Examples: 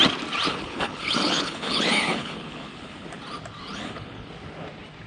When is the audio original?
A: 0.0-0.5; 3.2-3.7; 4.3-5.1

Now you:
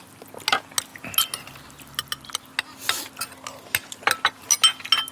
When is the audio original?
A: 0.0-5.1

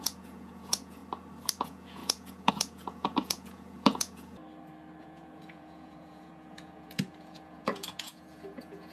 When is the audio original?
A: 1.0-1.6; 4.4-5.0